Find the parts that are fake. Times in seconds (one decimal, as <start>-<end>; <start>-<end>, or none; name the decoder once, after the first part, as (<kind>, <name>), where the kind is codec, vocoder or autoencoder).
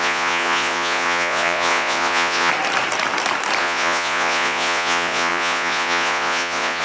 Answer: 0.0-2.5 (vocoder, Vocos); 3.6-6.8